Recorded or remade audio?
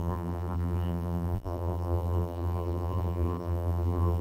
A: remade